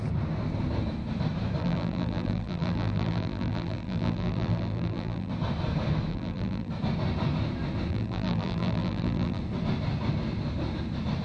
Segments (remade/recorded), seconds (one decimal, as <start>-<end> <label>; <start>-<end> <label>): 0.0-1.6 recorded; 1.6-5.3 remade; 5.3-6.1 recorded; 6.1-6.7 remade; 6.7-7.9 recorded; 7.9-9.4 remade; 9.4-11.2 recorded